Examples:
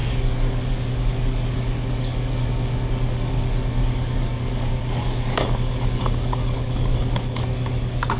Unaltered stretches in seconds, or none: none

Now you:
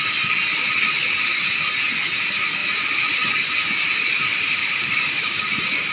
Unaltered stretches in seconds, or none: 0.0-4.6; 5.4-5.9

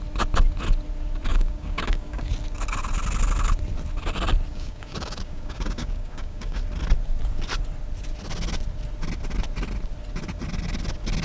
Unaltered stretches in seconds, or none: 0.0-1.3; 2.3-4.5; 6.6-11.2

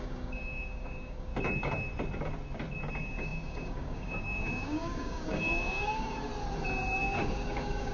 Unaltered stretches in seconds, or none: 1.3-2.9; 6.3-7.0

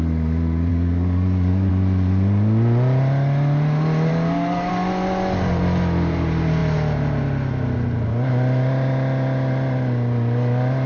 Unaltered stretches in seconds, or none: 0.0-0.7; 1.7-4.1; 4.7-10.9

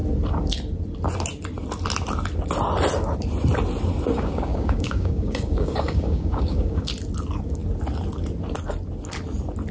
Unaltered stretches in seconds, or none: 0.0-4.1; 6.9-9.7